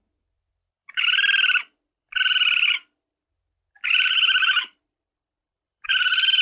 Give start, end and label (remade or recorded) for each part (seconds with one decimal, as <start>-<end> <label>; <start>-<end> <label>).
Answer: 0.0-0.7 recorded; 0.7-3.3 remade; 3.3-3.7 recorded; 3.7-5.9 remade; 5.9-6.4 recorded